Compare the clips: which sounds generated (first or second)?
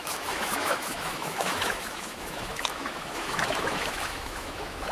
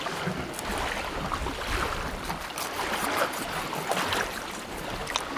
first